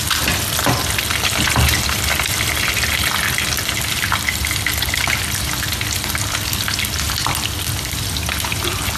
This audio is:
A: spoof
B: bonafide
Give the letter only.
B